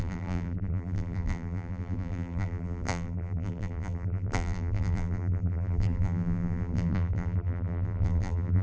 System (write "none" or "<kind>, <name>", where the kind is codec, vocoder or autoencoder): vocoder, BigVGAN v2